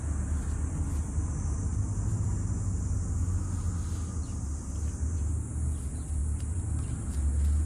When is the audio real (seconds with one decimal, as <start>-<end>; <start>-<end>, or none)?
0.0-6.2; 7.2-7.7